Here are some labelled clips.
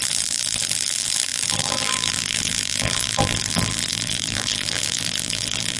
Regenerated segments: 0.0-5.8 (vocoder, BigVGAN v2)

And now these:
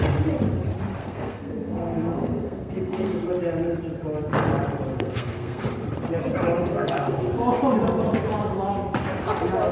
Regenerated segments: 1.0-3.3 (codec, SNAC); 4.9-5.6; 6.6-7.3

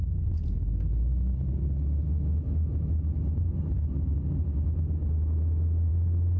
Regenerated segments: none

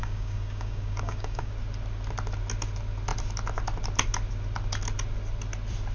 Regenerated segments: 0.0-1.5 (codec, DAC)

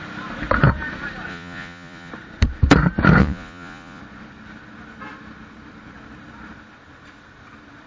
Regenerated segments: 1.3-2.1 (vocoder, Vocos); 3.2-4.0

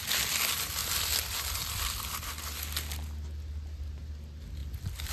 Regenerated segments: 4.6-5.1 (vocoder, BigVGAN v2)